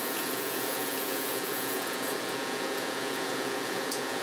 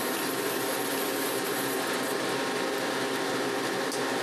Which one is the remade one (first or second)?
first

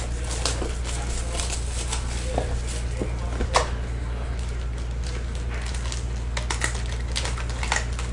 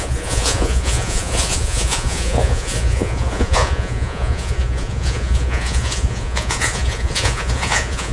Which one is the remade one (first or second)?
second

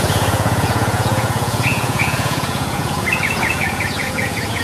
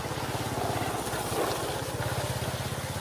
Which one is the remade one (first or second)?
first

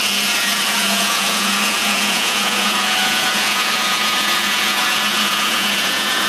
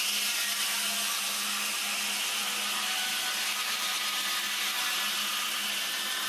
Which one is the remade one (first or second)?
first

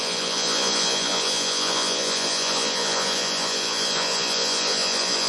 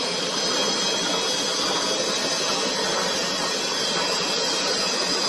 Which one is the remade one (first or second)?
first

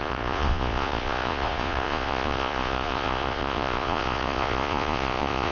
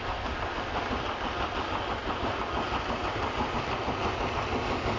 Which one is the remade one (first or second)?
first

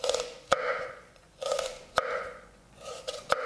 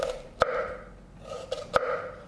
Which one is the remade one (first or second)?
first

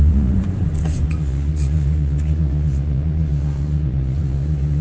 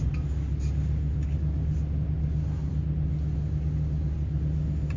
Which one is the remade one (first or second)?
first